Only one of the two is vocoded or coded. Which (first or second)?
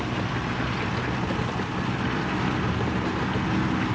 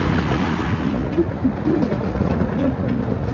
second